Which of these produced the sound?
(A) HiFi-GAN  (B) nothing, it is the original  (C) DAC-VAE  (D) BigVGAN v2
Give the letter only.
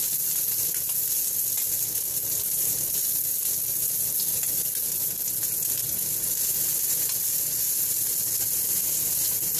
B